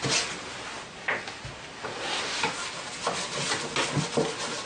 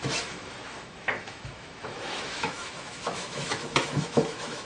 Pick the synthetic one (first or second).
second